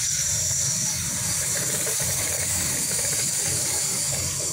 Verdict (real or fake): fake